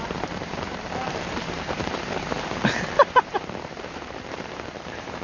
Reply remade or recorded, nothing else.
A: remade